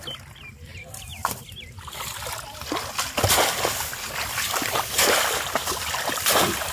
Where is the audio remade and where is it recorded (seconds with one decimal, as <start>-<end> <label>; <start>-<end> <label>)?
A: 0.0-6.7 recorded